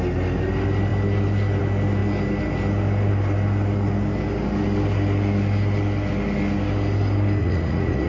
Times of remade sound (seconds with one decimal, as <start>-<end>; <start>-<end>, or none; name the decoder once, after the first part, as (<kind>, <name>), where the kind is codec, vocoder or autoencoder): 7.4-8.1 (vocoder, Vocos)